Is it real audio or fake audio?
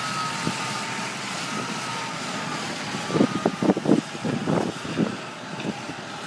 real